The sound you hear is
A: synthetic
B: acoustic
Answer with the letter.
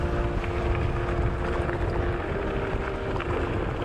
B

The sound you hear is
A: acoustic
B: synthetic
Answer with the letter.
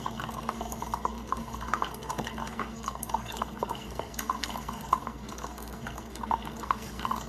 B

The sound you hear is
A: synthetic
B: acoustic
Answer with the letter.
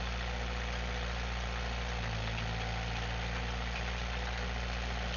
B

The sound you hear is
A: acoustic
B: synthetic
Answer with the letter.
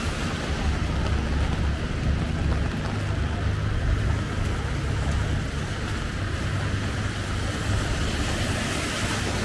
A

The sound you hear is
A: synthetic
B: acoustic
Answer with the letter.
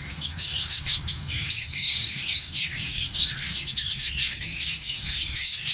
A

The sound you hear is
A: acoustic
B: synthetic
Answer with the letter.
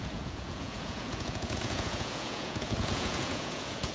B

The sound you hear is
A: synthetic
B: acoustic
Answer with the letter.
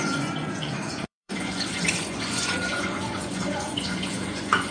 A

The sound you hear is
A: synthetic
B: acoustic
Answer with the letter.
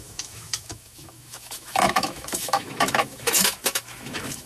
A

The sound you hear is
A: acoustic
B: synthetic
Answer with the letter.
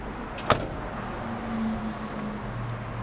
A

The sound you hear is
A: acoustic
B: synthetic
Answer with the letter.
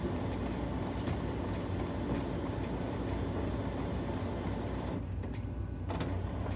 A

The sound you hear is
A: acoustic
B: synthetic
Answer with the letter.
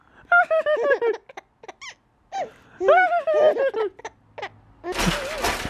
A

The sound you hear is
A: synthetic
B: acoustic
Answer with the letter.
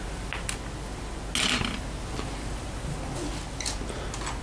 B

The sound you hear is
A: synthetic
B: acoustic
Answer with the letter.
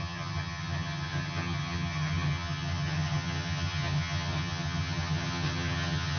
A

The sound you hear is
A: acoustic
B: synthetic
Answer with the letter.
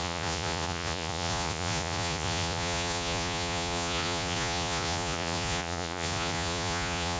B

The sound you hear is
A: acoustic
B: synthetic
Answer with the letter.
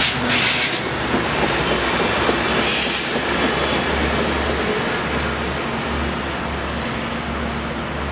A